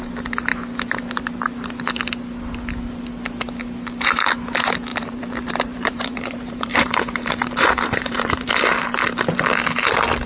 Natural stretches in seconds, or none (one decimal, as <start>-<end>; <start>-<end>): 0.0-4.9; 8.5-10.3